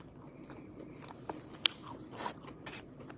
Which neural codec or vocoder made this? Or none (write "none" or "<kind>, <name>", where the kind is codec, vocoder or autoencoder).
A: none